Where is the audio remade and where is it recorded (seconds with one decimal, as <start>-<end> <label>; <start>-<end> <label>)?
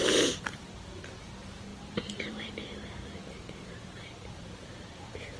0.0-1.1 remade; 1.1-1.7 recorded; 1.7-4.9 remade; 4.9-5.4 recorded